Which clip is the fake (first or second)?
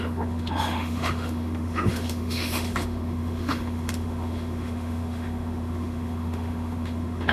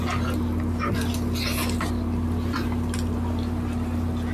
first